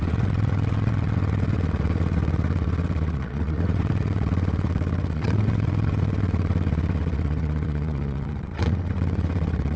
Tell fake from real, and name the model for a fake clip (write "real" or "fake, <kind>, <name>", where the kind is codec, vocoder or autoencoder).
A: fake, vocoder, WaveNeXt